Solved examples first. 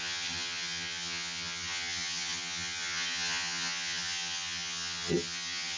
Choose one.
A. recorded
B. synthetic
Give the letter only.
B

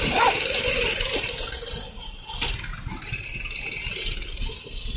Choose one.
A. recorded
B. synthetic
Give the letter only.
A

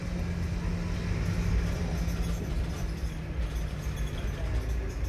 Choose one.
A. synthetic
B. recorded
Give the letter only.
B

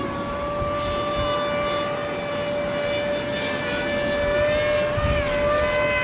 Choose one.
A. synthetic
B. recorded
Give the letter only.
B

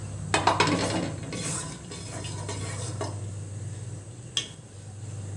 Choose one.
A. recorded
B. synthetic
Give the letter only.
A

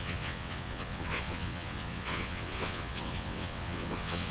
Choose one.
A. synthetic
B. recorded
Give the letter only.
A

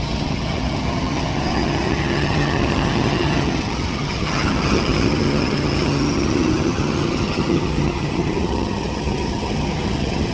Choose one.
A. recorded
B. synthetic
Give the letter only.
B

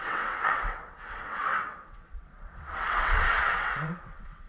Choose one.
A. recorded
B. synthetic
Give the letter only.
B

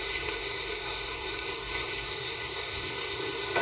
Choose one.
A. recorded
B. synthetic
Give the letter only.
B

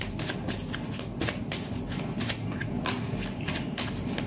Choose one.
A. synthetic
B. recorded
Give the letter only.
B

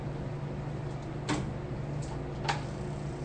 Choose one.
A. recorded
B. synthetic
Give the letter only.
A